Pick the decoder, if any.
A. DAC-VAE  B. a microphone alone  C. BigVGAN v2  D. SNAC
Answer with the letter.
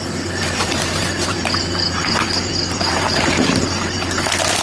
C